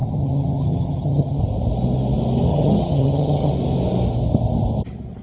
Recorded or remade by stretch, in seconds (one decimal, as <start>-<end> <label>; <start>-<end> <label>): 0.0-1.4 remade; 1.4-2.5 recorded; 2.5-3.5 remade; 3.5-5.2 recorded